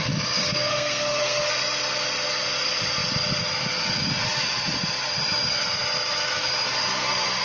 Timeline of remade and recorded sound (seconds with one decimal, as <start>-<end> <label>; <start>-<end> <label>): 0.0-0.4 recorded; 0.4-1.5 remade; 1.5-7.4 recorded